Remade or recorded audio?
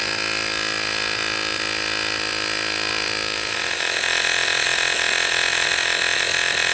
recorded